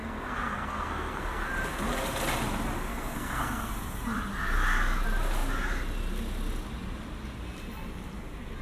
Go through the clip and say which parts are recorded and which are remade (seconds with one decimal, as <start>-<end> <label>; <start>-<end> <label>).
0.0-1.5 remade; 1.5-2.9 recorded; 2.9-3.7 remade; 3.7-8.6 recorded